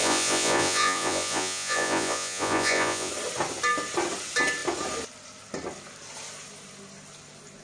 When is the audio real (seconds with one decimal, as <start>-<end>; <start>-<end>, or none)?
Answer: 3.1-7.6